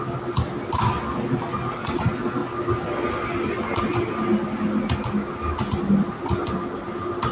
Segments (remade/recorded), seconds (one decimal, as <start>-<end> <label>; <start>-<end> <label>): 0.0-7.3 recorded